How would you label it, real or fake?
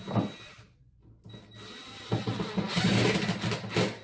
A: real